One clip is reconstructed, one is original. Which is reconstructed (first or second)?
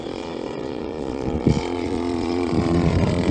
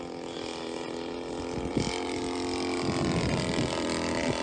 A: first